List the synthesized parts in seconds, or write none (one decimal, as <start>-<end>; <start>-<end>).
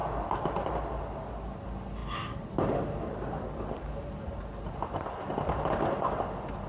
0.0-1.0